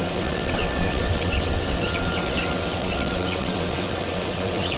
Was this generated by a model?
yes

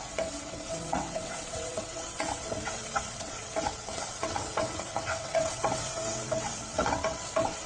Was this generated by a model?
yes